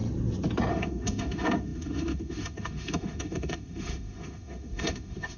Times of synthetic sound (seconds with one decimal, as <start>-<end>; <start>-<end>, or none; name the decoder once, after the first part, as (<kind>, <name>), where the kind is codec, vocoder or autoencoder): 0.7-5.4 (autoencoder, DAC-VAE)